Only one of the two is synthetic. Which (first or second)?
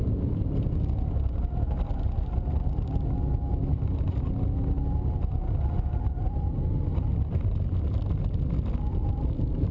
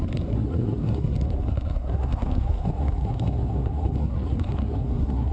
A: second